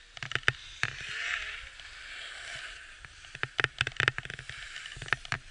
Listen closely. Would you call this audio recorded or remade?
recorded